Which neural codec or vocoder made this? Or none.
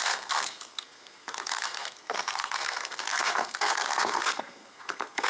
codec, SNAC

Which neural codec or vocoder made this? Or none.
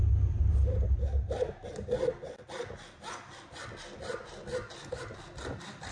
none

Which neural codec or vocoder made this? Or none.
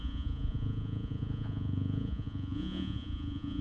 vocoder, Vocos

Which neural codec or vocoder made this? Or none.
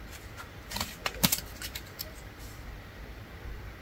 none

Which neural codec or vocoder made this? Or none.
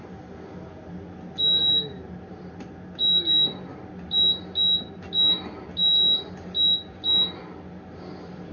none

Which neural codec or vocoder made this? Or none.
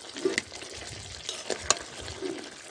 none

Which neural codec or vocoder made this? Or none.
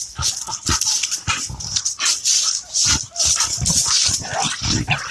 none